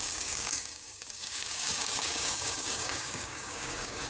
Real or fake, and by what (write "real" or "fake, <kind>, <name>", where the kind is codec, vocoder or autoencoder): fake, codec, DAC